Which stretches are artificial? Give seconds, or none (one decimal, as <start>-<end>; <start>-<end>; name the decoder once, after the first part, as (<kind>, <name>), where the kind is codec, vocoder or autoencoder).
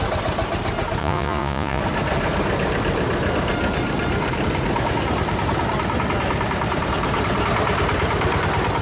1.0-1.8 (vocoder, Vocos)